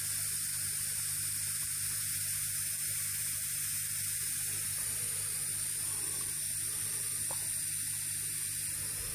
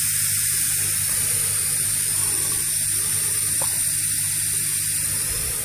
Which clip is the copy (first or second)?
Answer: second